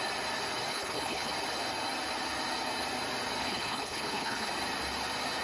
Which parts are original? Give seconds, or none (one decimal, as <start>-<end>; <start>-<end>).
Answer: 0.0-0.7; 1.3-3.4; 4.5-5.4